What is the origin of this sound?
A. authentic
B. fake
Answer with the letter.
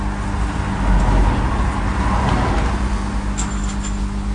A